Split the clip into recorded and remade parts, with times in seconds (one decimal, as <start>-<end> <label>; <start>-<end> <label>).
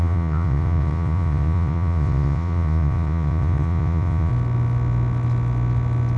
0.0-4.3 remade; 4.3-6.2 recorded